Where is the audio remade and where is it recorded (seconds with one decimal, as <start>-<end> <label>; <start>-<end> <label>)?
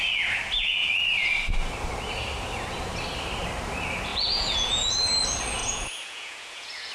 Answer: 0.0-4.1 recorded; 4.1-4.9 remade; 4.9-5.6 recorded; 5.6-6.9 remade